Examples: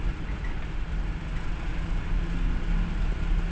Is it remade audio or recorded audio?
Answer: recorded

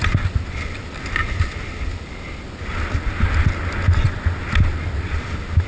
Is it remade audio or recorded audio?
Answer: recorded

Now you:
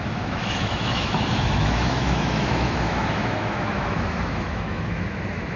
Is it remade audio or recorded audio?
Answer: remade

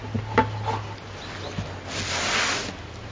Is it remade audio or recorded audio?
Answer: recorded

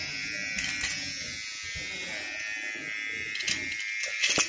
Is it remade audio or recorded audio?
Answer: recorded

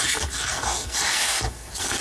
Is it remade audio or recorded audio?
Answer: remade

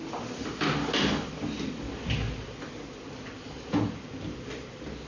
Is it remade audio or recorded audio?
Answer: recorded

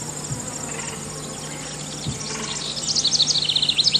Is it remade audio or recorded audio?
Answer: recorded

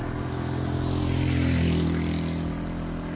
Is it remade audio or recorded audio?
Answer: recorded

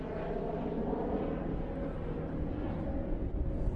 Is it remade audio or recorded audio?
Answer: recorded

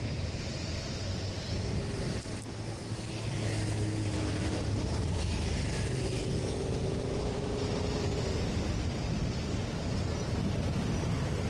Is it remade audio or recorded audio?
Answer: recorded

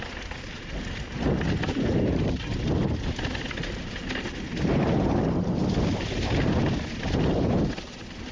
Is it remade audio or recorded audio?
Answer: recorded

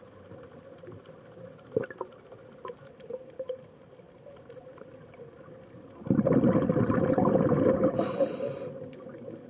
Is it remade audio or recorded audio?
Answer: recorded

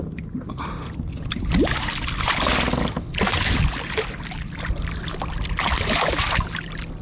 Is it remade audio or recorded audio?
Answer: recorded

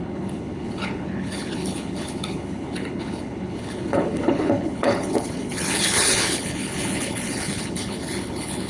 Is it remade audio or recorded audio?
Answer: remade